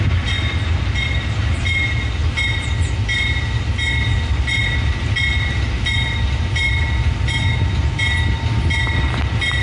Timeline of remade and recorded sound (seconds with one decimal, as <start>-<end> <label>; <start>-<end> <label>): 0.0-9.6 recorded